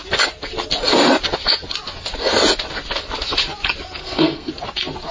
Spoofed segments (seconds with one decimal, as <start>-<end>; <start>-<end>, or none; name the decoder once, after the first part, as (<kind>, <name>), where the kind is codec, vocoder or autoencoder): 4.0-4.5 (codec, SNAC)